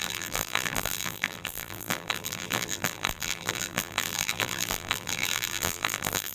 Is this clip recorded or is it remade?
remade